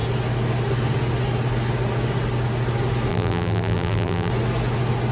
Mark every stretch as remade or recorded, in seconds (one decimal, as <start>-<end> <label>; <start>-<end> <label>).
0.0-3.1 recorded; 3.1-4.3 remade; 4.3-5.1 recorded